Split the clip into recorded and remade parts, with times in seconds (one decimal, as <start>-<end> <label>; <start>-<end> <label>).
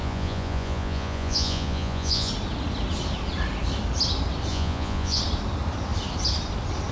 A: 0.0-2.3 remade; 2.3-4.5 recorded; 4.5-5.2 remade; 5.2-6.9 recorded